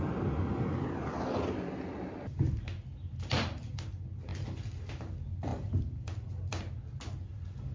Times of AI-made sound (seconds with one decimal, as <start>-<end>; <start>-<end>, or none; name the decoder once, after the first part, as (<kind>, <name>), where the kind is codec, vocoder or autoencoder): 2.9-3.9 (vocoder, BigVGAN v2); 4.3-4.8; 5.5-6.3